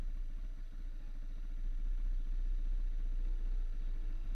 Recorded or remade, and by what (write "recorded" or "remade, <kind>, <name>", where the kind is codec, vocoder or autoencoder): recorded